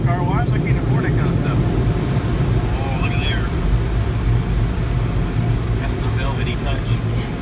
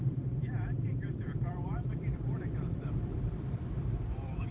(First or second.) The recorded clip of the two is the first